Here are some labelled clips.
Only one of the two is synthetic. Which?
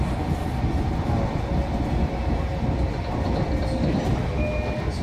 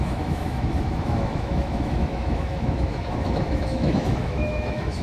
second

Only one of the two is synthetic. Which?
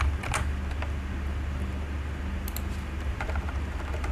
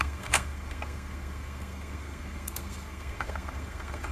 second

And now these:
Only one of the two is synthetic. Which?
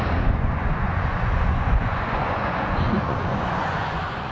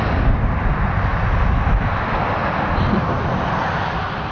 first